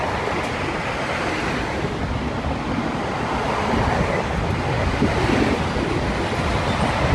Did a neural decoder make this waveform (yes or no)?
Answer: no